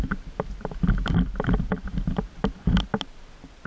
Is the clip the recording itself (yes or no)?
yes